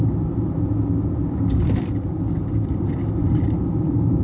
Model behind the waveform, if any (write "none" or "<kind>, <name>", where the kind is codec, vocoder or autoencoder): none